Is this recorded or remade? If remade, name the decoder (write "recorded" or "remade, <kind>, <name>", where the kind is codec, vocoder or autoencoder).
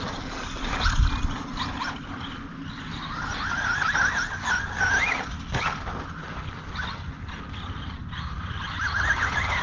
recorded